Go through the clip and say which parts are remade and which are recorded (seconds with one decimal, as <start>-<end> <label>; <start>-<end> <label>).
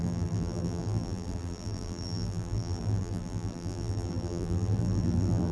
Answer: 0.0-5.5 remade